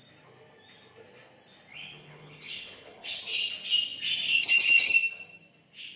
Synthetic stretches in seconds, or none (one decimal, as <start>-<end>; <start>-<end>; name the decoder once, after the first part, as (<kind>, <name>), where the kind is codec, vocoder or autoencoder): 1.7-3.2 (codec, HILCodec)